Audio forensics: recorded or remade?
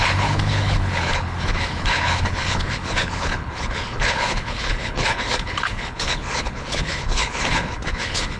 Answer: remade